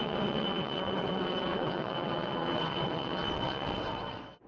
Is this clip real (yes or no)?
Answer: no